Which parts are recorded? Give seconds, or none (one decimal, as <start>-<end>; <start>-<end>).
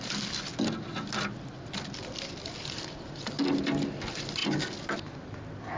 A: 0.0-5.8